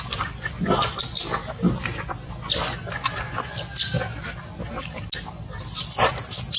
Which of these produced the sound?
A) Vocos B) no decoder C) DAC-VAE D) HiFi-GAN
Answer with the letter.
B